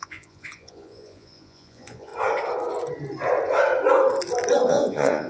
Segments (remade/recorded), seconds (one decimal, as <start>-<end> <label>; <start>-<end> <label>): 0.0-2.1 remade; 2.1-4.7 recorded; 4.7-5.3 remade